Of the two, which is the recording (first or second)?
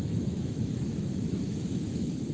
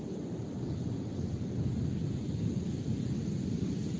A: second